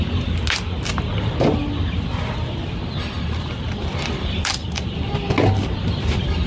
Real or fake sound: real